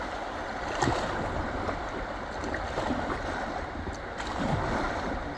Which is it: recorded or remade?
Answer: recorded